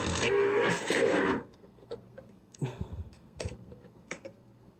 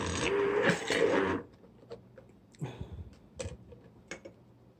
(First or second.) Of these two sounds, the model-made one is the first